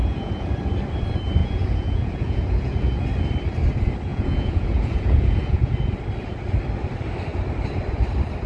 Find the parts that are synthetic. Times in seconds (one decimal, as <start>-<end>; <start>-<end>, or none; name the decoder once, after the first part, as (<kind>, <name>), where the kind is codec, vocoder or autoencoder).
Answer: 0.0-0.5 (vocoder, Vocos); 1.4-3.0; 4.1-5.7